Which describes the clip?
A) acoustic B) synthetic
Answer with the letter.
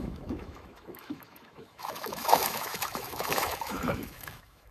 B